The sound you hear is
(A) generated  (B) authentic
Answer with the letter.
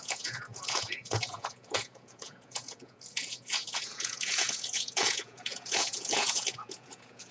A